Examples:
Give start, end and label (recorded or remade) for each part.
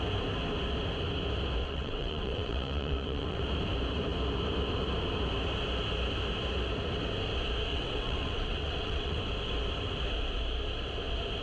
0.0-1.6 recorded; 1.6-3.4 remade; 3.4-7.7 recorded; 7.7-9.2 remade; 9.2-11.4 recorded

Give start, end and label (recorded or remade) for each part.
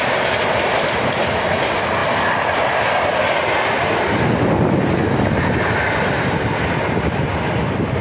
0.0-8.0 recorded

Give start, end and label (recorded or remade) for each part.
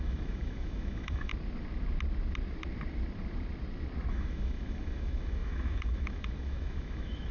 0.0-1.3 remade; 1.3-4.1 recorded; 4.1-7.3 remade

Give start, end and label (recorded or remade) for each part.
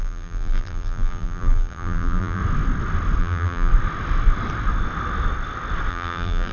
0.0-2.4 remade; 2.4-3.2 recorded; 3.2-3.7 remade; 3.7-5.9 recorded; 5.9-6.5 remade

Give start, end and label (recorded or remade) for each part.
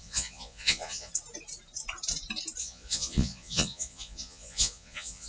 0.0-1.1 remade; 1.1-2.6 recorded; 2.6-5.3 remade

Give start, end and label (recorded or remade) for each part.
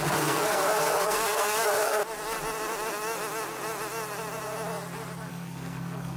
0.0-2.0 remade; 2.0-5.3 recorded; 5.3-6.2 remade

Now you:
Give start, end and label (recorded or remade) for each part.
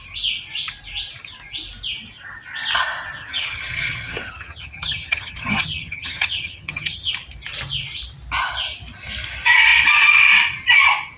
0.0-3.2 recorded; 3.2-7.1 remade; 7.1-11.2 recorded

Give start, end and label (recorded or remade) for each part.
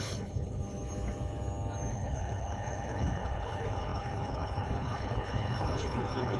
0.0-0.6 remade; 0.6-1.9 recorded; 1.9-6.4 remade